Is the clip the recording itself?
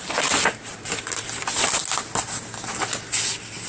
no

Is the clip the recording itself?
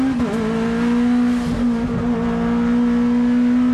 yes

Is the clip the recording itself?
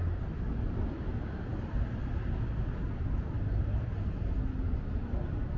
yes